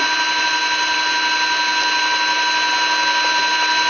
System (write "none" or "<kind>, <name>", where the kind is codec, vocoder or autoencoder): none